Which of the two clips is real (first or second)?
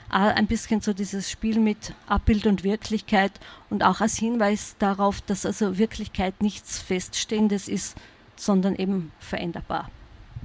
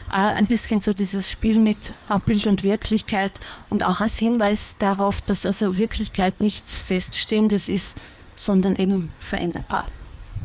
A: first